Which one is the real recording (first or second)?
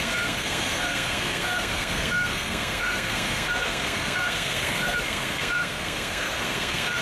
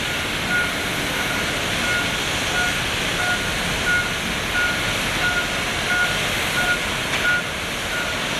second